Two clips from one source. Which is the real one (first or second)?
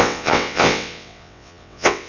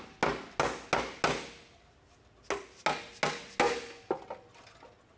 second